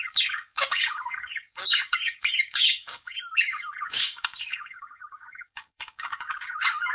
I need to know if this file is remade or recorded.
remade